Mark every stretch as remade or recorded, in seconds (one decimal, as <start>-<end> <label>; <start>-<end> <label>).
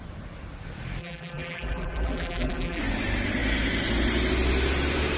0.0-1.0 recorded; 1.0-2.8 remade; 2.8-5.2 recorded